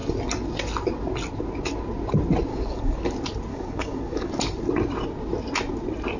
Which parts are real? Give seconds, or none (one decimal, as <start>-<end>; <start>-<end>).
0.0-2.5; 3.0-3.5; 4.3-6.2